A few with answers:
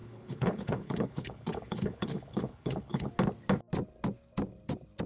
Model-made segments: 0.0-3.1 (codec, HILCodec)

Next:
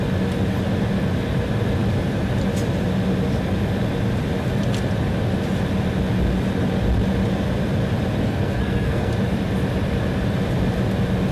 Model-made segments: 8.2-9.1 (codec, SNAC)

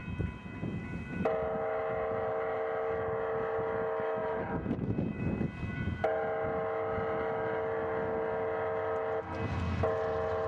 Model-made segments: 4.2-5.2 (vocoder, BigVGAN v2)